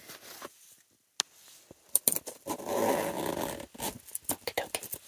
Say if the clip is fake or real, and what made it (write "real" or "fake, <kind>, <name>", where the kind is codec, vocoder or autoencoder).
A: real